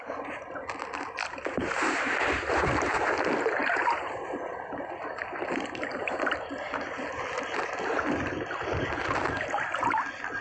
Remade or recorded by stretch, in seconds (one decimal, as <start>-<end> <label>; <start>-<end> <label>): 0.0-1.2 recorded; 1.2-3.0 remade; 3.0-3.6 recorded; 3.6-4.2 remade; 4.2-5.9 recorded; 5.9-6.5 remade; 6.5-10.4 recorded